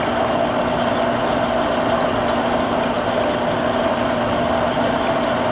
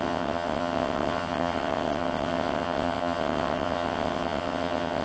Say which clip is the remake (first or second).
second